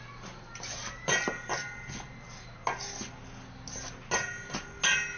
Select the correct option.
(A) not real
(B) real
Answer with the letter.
B